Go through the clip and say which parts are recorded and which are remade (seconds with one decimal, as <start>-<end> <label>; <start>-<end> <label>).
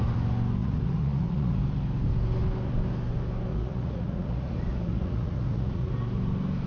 0.0-0.6 recorded; 0.6-1.6 remade; 1.6-3.5 recorded; 3.5-5.9 remade; 5.9-6.7 recorded